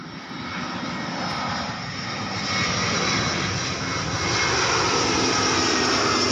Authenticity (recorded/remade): recorded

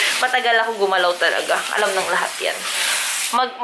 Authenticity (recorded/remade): recorded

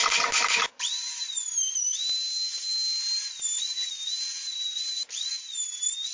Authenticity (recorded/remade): recorded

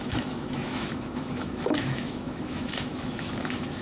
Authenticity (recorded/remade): remade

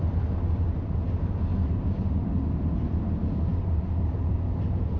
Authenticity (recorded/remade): recorded